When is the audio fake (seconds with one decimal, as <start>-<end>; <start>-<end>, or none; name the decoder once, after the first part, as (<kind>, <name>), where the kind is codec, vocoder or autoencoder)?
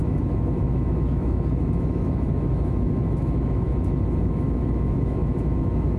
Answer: 0.0-6.0 (autoencoder, DAC-VAE)